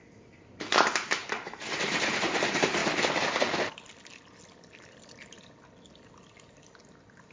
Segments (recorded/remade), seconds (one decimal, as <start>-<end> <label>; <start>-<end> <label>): 0.0-2.8 remade; 2.8-6.8 recorded; 6.8-7.3 remade